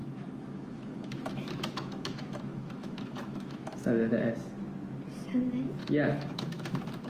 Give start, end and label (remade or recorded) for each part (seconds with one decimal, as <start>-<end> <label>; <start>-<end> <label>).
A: 0.0-4.3 remade; 4.3-5.8 recorded; 5.8-7.1 remade